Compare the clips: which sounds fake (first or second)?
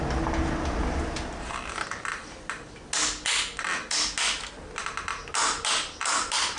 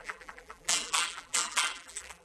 second